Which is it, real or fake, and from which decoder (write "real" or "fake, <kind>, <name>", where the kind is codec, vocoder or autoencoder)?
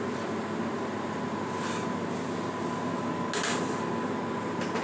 real